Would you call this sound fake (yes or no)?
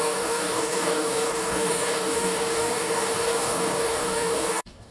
yes